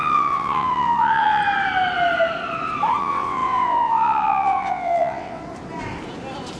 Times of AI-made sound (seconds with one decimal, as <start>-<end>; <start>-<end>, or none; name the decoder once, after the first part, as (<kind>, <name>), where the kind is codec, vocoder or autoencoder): 0.0-1.4 (vocoder, WaveNeXt); 3.0-5.4